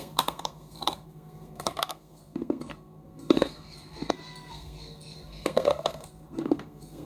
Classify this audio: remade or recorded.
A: remade